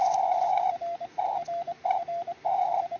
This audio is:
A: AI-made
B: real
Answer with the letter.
B